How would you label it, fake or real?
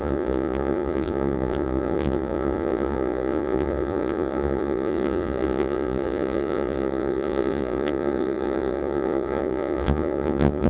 fake